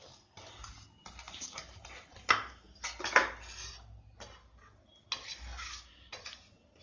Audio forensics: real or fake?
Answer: real